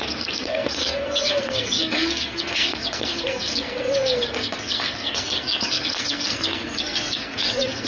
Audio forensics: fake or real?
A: fake